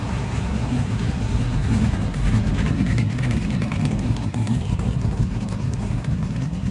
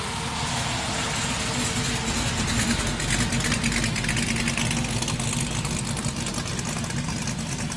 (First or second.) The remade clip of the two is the first